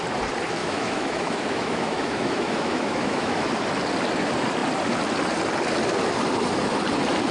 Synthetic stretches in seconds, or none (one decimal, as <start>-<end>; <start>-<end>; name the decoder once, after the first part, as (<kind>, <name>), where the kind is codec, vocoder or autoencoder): 0.6-3.5 (autoencoder, DAC-VAE)